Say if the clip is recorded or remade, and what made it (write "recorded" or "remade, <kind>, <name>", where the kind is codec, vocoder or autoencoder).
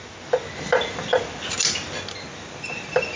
recorded